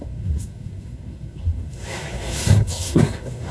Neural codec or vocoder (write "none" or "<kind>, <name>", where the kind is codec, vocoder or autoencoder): codec, SNAC